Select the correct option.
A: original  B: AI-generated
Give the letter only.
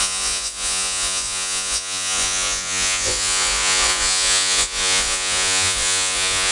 B